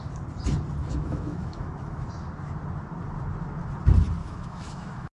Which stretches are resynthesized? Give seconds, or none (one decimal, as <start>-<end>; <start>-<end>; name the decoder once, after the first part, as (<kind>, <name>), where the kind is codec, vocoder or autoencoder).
0.8-2.1 (autoencoder, DAC-VAE); 4.2-5.1